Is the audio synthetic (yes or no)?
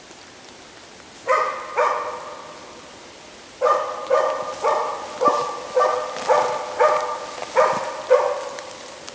no